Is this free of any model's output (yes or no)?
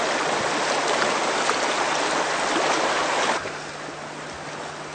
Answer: yes